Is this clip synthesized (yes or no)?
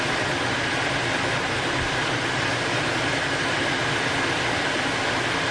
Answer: no